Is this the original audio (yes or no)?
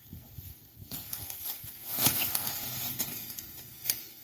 no